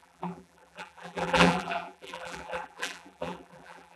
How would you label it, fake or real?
fake